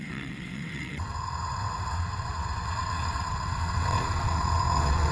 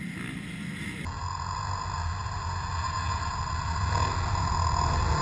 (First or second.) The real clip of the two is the second